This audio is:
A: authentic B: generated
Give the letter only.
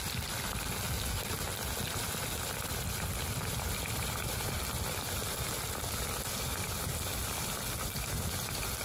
A